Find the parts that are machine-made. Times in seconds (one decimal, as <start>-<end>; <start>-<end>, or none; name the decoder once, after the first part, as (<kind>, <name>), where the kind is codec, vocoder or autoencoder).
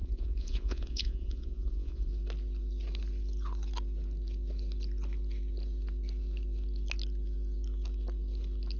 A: 0.0-2.1 (vocoder, Vocos)